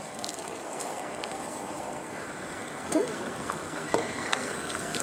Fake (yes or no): yes